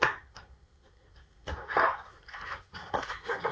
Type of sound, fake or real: fake